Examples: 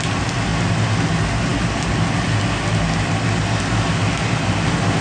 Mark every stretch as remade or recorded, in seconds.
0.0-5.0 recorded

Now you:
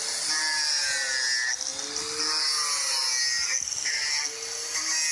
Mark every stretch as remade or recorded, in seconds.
0.0-5.1 recorded

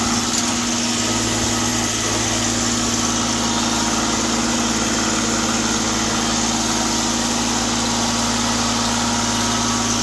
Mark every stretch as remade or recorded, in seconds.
0.0-10.0 recorded

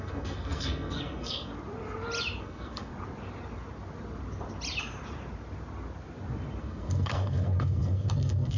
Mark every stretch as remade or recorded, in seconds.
0.0-1.5 remade; 1.5-2.4 recorded; 2.4-2.9 remade; 2.9-6.6 recorded; 6.6-8.6 remade

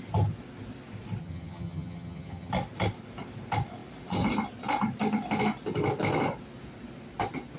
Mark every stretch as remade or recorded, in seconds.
0.0-1.2 recorded; 1.2-2.5 remade; 2.5-7.6 recorded

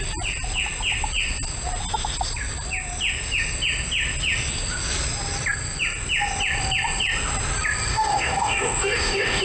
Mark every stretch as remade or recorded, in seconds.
0.0-7.9 recorded; 7.9-9.4 remade

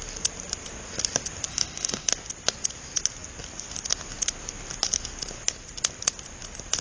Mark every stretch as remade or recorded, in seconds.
0.0-1.5 recorded; 1.5-2.1 remade; 2.1-6.8 recorded